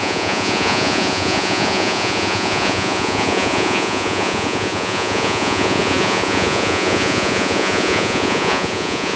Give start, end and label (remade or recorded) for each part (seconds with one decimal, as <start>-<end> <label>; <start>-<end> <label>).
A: 0.0-9.2 remade